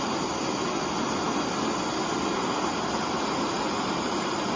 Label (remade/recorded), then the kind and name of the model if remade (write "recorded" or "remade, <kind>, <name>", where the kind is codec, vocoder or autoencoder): recorded